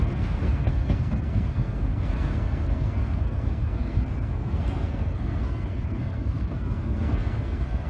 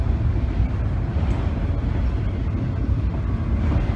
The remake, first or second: first